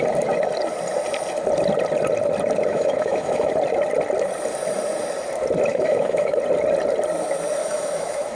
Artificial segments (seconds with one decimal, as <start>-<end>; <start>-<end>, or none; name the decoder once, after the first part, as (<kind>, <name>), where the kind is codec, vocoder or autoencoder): 2.7-3.5 (autoencoder, DAC-VAE); 5.7-6.4; 7.6-8.4